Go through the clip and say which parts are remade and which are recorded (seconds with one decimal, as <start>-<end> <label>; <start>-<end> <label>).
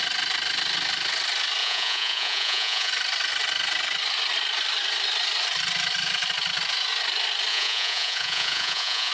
0.0-1.6 recorded; 1.6-2.9 remade; 2.9-7.5 recorded; 7.5-9.1 remade